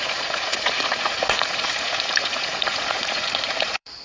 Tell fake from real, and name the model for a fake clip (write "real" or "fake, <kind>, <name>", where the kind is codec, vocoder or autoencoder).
fake, vocoder, Vocos